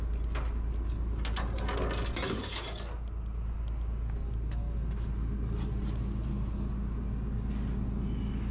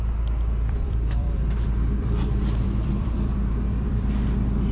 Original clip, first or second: first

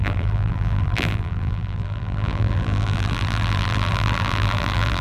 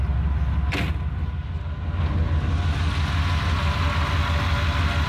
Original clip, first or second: second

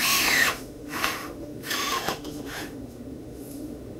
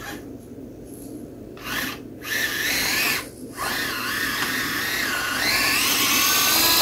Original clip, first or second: second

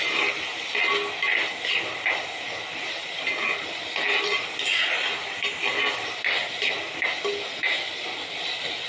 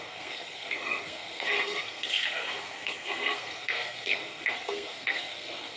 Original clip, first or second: first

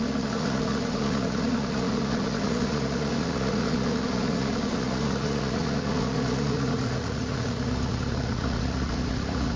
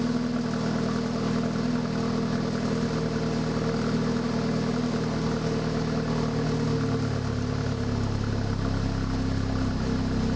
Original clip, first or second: second